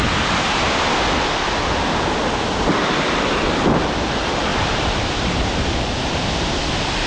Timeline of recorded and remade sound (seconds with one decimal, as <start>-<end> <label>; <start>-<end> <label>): 0.0-4.5 recorded; 4.5-5.4 remade; 5.4-7.1 recorded